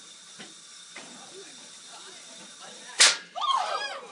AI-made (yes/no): yes